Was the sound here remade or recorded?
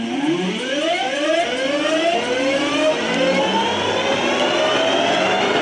recorded